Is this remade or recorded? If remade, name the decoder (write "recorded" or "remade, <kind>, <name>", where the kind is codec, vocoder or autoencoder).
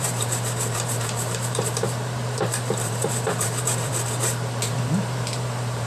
remade, vocoder, BigVGAN v2